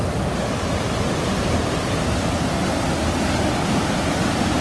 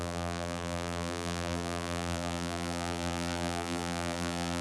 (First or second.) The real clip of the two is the first